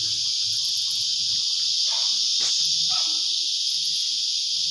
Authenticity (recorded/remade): recorded